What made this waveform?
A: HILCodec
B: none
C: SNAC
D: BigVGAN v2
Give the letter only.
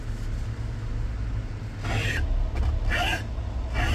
B